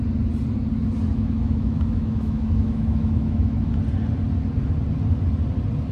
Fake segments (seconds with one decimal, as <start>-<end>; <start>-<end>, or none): 1.1-3.7